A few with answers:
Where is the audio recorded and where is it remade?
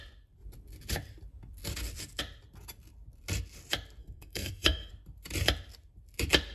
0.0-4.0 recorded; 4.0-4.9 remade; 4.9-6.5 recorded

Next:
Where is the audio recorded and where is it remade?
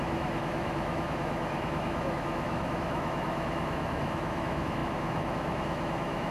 0.0-6.3 remade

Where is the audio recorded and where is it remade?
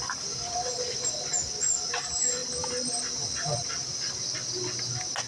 0.0-5.3 recorded